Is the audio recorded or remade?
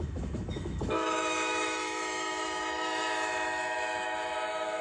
remade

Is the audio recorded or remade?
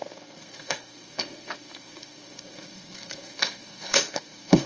remade